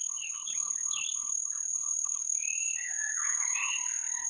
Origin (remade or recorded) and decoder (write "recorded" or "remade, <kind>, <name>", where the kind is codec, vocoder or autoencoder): remade, codec, HILCodec